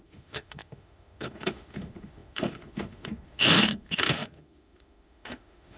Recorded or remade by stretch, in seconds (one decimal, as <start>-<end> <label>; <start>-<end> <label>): 0.0-5.8 remade